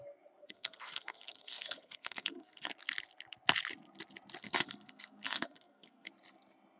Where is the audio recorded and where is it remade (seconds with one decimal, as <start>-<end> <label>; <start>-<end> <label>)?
0.0-0.4 recorded; 0.4-2.7 remade; 2.7-4.4 recorded; 4.4-6.1 remade; 6.1-6.8 recorded